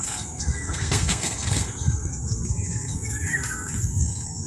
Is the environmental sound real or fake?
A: fake